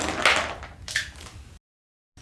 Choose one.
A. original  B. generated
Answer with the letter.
A